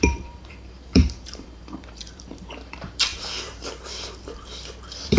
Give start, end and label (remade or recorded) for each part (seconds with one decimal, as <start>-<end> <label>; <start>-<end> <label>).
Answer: 0.0-5.2 remade